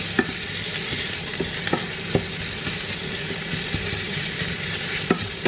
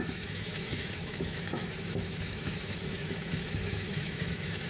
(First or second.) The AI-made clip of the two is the second